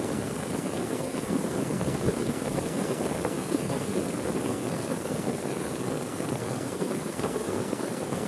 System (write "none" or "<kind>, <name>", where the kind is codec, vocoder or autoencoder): codec, SNAC